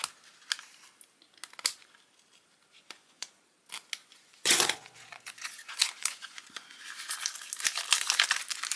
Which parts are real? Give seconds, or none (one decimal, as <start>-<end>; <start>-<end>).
0.0-2.7; 3.4-4.0; 6.8-8.8